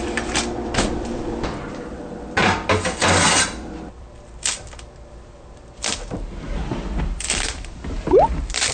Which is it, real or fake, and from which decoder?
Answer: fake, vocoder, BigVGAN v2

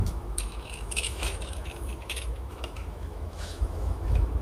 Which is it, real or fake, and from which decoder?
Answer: fake, autoencoder, DAC-VAE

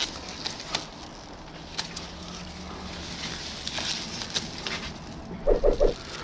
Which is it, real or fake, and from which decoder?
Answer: real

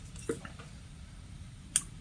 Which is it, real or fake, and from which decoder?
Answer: real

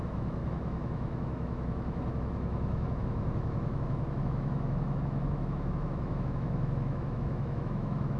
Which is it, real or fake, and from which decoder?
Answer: fake, autoencoder, DAC-VAE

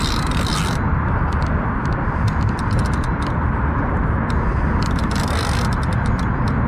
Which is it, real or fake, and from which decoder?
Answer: real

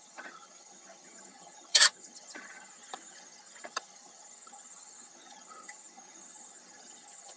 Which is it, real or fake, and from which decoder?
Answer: fake, vocoder, HiFi-GAN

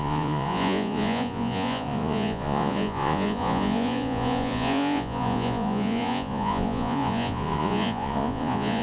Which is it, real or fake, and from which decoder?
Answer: fake, vocoder, Vocos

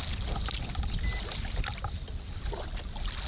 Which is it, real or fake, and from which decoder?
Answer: real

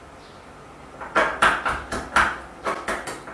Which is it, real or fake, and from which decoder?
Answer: real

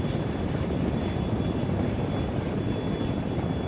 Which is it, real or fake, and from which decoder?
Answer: real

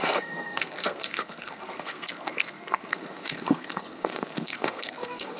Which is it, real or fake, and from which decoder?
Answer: fake, codec, SNAC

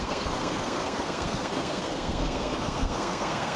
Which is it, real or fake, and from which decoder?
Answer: fake, codec, SNAC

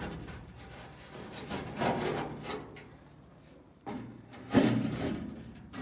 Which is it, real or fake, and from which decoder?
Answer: fake, vocoder, BigVGAN v2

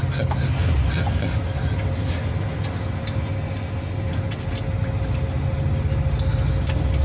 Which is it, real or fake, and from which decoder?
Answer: real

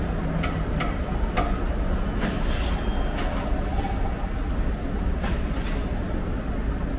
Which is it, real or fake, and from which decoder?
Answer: real